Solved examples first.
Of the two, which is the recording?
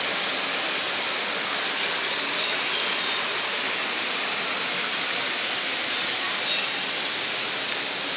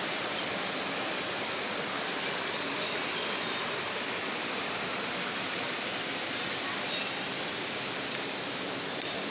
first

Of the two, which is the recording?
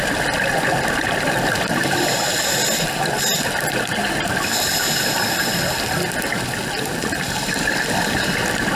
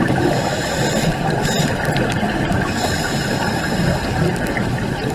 first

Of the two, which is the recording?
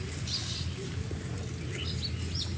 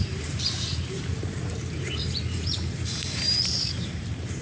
first